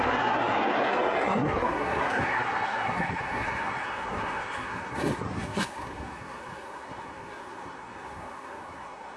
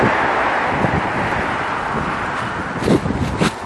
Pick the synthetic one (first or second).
first